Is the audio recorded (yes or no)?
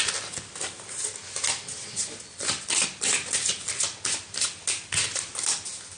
yes